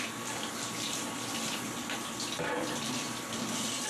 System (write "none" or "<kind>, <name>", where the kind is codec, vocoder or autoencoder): none